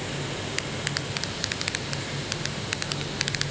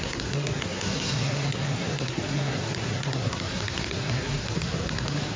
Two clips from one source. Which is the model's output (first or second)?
second